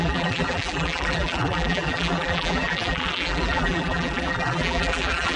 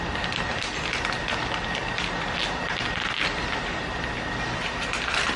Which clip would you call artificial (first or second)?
first